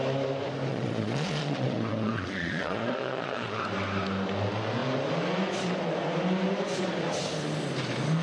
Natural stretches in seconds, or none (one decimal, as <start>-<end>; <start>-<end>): 0.0-0.7; 3.6-8.2